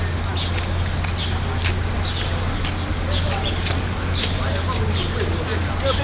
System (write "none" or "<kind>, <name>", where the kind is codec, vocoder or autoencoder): none